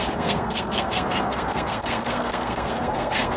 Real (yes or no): no